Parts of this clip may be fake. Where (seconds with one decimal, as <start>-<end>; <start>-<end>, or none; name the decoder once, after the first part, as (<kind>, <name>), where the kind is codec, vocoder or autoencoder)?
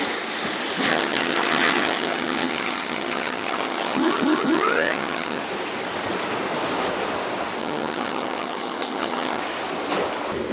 0.9-5.4 (vocoder, HiFi-GAN); 7.6-9.4